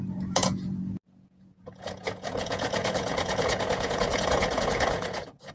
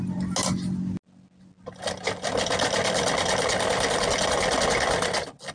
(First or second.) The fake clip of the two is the first